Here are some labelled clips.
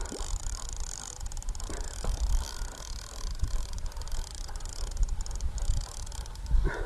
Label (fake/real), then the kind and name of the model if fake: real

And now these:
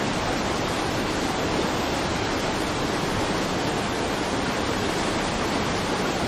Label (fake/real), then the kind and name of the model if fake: real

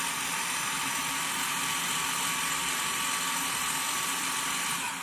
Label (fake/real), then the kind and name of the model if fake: real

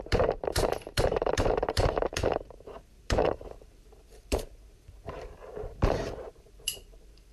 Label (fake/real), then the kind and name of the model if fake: fake, vocoder, BigVGAN v2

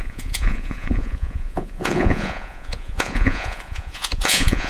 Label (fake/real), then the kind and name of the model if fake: fake, vocoder, Vocos